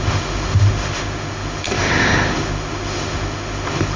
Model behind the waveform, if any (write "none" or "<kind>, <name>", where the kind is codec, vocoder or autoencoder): autoencoder, DAC-VAE